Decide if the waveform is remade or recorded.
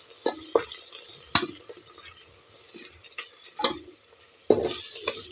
recorded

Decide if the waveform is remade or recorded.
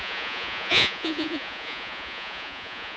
remade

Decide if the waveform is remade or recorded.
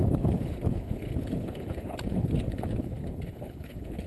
remade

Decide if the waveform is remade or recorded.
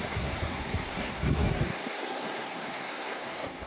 remade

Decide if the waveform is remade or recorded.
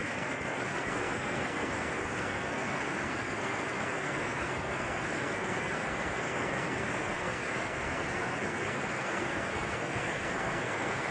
remade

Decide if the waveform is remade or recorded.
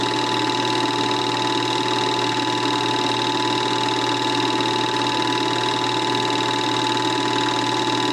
recorded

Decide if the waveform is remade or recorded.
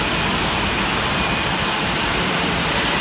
remade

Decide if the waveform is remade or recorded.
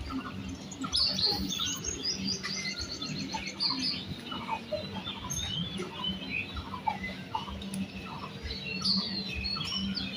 recorded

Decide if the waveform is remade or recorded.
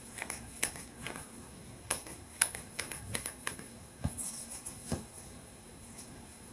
remade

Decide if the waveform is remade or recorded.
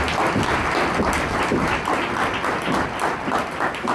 recorded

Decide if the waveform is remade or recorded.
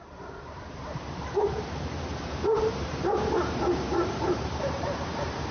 remade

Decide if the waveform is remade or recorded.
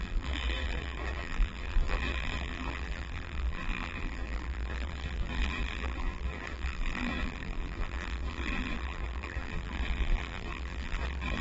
remade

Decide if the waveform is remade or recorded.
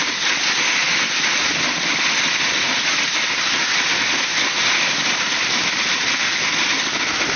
recorded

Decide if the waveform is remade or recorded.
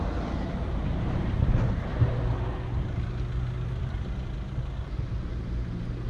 recorded